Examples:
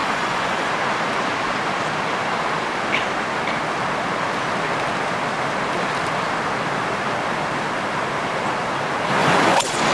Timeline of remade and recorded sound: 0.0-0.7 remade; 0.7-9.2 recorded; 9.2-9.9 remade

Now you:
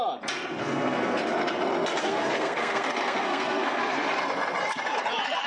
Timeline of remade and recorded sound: 0.0-0.6 recorded; 0.6-1.2 remade; 1.2-2.0 recorded; 2.0-3.8 remade; 3.8-5.5 recorded

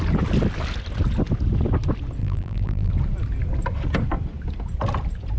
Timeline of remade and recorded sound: 0.0-2.2 recorded; 2.2-2.9 remade; 2.9-5.4 recorded

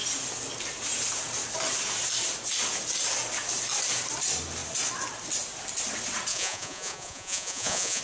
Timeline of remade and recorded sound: 0.0-6.3 recorded; 6.3-8.0 remade

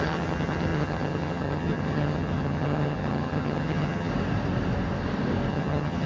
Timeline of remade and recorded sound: 0.0-4.1 remade; 4.1-5.5 recorded; 5.5-6.1 remade

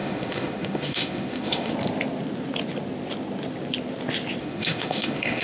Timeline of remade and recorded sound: 0.0-1.7 remade; 1.7-4.4 recorded; 4.4-5.4 remade

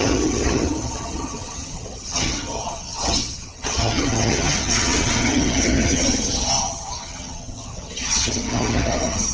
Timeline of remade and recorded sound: 0.0-9.3 remade